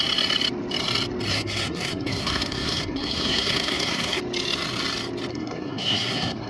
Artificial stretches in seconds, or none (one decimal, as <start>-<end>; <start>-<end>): 1.3-4.2; 5.3-6.5